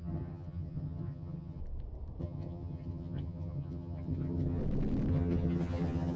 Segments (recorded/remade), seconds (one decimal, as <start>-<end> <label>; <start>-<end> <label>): 0.0-1.6 remade; 1.6-2.2 recorded; 2.2-4.6 remade; 4.6-5.1 recorded; 5.1-6.2 remade